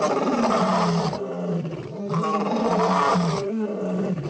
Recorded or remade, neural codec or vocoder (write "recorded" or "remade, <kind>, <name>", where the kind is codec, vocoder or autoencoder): remade, vocoder, BigVGAN v2